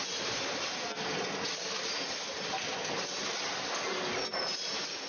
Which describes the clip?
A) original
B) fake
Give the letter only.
A